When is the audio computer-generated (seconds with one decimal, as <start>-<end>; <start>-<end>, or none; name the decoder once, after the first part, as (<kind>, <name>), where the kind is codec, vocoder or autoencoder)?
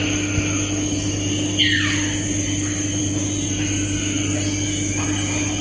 none